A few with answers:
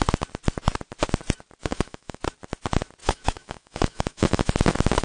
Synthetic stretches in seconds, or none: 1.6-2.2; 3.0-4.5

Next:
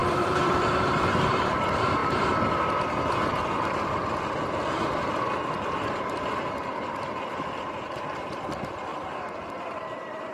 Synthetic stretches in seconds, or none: 0.0-1.1

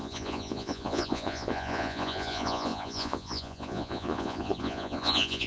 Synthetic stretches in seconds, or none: 0.0-5.5

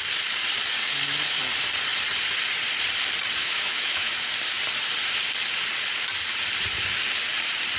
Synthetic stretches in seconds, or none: 3.4-4.3

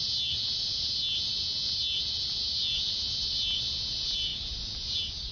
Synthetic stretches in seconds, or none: none

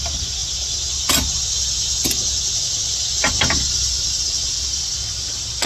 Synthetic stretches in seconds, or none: none

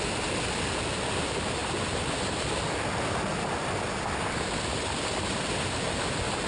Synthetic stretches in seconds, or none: none